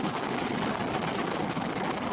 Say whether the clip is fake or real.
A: real